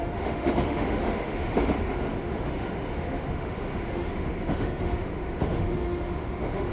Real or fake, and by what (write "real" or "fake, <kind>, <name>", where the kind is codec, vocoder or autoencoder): fake, autoencoder, DAC-VAE